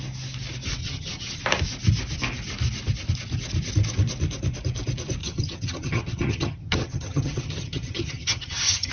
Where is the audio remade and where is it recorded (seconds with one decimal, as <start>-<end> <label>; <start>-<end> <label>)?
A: 0.0-0.8 recorded; 0.8-1.4 remade; 1.4-5.2 recorded; 5.2-8.9 remade